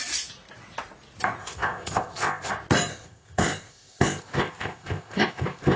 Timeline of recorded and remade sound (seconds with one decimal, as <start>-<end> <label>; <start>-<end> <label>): 0.0-1.4 recorded; 1.4-2.5 remade; 2.5-2.9 recorded; 2.9-5.8 remade